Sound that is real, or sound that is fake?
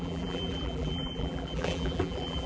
fake